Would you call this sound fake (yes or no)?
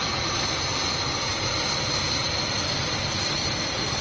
no